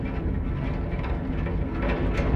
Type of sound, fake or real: real